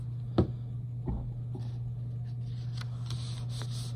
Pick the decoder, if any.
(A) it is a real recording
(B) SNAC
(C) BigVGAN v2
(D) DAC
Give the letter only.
A